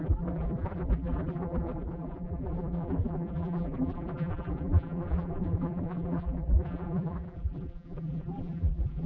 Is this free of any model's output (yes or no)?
no